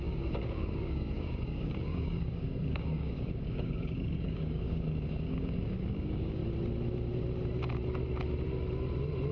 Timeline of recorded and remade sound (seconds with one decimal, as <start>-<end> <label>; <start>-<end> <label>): 0.0-6.4 remade; 6.4-9.3 recorded